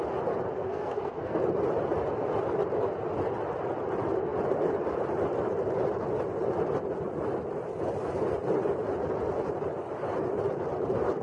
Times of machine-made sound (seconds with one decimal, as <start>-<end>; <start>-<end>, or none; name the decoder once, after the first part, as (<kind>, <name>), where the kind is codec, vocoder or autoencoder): 0.6-1.4 (codec, SNAC)

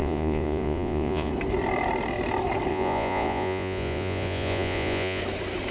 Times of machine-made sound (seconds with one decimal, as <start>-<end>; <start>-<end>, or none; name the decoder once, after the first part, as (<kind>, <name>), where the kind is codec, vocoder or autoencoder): 0.0-1.3 (vocoder, Vocos); 2.7-5.2

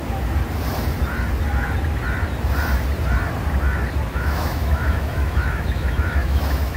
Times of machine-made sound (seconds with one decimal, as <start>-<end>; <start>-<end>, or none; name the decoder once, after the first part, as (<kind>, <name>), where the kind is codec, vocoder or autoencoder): 4.1-6.8 (autoencoder, DAC-VAE)

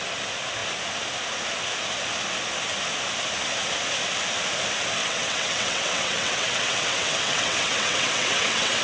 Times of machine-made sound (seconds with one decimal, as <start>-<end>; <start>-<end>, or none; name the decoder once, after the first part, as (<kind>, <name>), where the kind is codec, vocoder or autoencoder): 5.0-8.8 (vocoder, WaveNeXt)

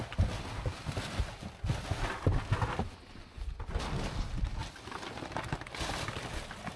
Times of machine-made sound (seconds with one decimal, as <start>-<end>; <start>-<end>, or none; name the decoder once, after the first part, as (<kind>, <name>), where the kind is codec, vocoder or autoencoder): none

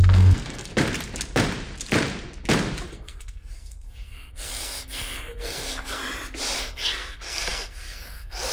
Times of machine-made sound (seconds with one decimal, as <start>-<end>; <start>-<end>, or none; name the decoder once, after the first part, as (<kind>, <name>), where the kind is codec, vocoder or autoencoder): 0.0-0.7 (codec, SNAC); 2.9-6.0; 6.6-8.5

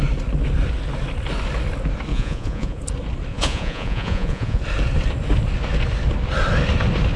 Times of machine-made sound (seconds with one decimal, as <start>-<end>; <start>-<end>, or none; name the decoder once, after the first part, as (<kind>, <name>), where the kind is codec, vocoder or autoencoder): 2.1-2.8 (vocoder, Vocos); 3.3-4.6